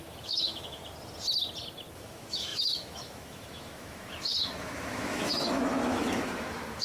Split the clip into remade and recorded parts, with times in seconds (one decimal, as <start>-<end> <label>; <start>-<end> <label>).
0.0-0.8 remade; 0.8-1.9 recorded; 1.9-6.8 remade